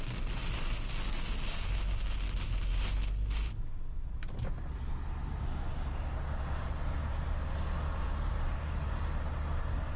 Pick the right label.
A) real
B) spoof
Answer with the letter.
A